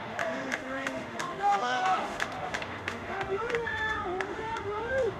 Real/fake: fake